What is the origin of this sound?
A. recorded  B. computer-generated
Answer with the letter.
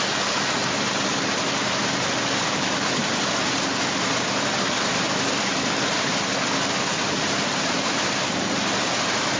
A